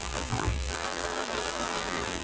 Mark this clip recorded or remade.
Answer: remade